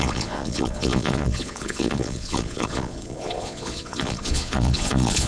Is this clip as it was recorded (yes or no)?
no